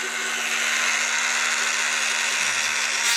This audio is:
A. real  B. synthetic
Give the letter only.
A